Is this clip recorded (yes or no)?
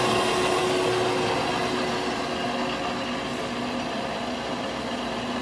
yes